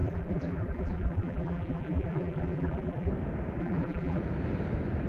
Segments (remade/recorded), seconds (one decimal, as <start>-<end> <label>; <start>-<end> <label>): 0.0-3.1 remade; 3.1-3.6 recorded; 3.6-4.2 remade; 4.2-5.1 recorded

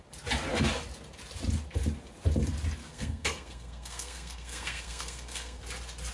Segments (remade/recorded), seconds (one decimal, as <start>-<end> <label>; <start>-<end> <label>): 0.0-2.8 recorded; 2.8-5.6 remade; 5.6-6.1 recorded

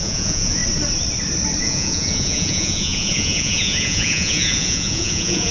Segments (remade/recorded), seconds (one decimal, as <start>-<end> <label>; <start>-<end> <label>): 0.0-0.6 remade; 0.6-1.6 recorded; 1.6-5.5 remade

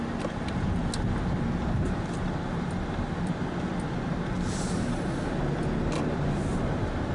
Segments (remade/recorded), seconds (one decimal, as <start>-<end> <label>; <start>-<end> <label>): 0.0-7.1 recorded

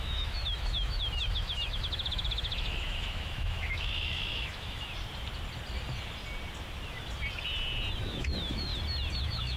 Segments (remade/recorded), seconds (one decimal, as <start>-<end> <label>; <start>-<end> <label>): 0.0-4.9 remade; 4.9-8.0 recorded; 8.0-8.7 remade; 8.7-9.2 recorded; 9.2-9.6 remade

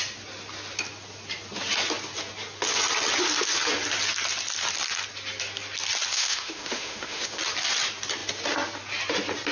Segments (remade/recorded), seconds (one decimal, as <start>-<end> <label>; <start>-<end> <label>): 0.0-6.1 recorded; 6.1-7.4 remade; 7.4-9.5 recorded

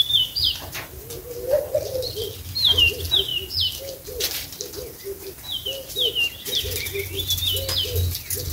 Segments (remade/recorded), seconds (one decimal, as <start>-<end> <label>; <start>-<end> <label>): 0.0-8.5 recorded